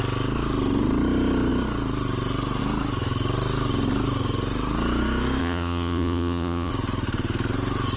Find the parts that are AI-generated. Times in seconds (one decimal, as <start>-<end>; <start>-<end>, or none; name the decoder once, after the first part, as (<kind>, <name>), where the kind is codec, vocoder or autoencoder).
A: 5.4-6.7 (vocoder, Vocos)